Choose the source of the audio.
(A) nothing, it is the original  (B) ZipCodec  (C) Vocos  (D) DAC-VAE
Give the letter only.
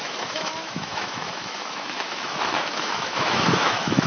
D